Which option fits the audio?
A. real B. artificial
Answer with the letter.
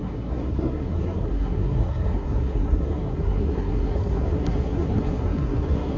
B